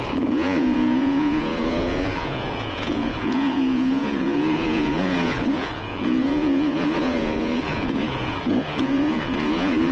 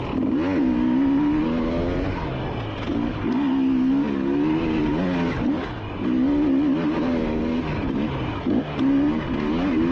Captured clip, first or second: second